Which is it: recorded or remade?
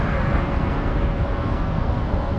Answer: remade